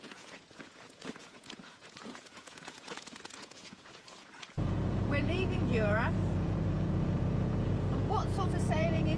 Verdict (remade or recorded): remade